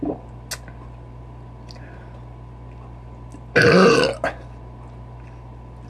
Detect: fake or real real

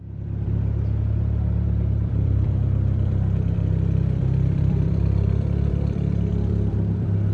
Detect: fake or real fake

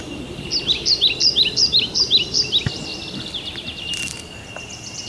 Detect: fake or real fake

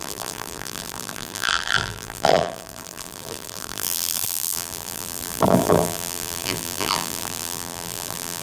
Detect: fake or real fake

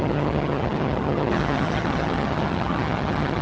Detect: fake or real fake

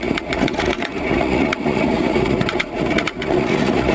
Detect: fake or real fake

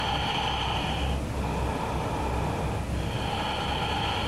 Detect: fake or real real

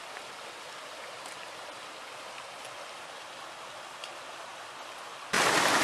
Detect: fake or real real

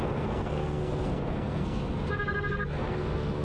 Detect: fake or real fake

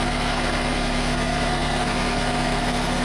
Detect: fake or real fake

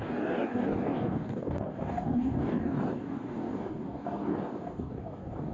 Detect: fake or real fake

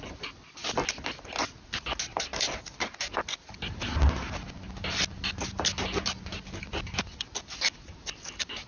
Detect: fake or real real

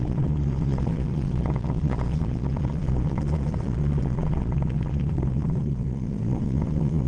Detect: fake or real fake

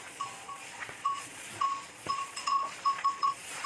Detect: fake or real fake